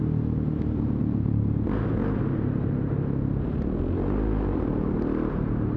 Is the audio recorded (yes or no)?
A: yes